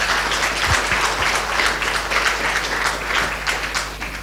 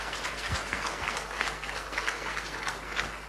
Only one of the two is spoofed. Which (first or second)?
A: second